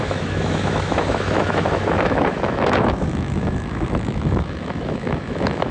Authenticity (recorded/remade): remade